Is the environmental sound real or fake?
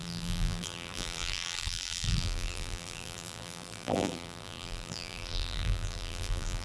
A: fake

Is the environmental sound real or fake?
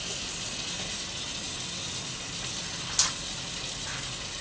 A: real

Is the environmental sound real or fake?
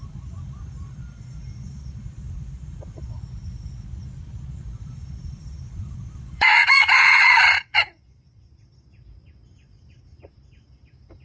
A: fake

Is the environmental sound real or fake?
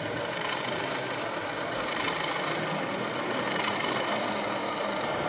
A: real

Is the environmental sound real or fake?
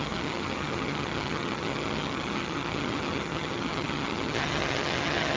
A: fake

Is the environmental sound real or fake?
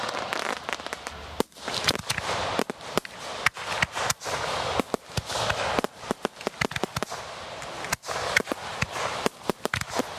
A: real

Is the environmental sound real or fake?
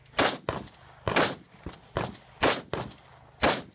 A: real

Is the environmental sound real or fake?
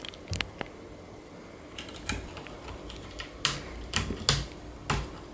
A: real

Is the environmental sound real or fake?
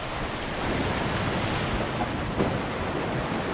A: real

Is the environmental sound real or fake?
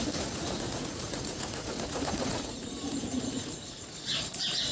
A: fake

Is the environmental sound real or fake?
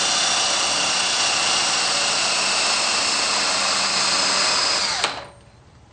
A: real